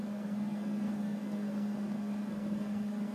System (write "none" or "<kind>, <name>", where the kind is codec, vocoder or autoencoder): codec, SNAC